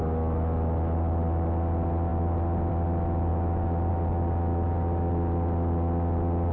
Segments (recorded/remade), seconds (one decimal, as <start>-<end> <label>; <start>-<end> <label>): 0.0-6.5 recorded